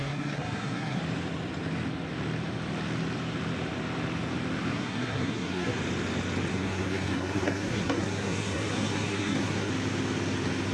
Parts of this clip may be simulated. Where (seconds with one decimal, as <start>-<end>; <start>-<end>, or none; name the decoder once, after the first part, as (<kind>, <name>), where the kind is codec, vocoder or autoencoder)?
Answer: 0.0-1.0 (codec, SNAC); 4.7-5.8; 6.5-9.7